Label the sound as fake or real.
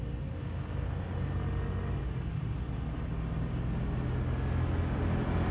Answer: real